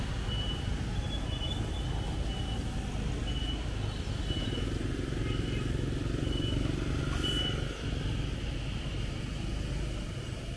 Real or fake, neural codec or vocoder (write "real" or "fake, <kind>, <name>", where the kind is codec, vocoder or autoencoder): real